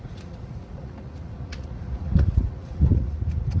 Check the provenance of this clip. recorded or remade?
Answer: remade